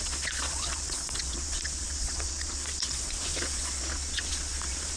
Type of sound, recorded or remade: remade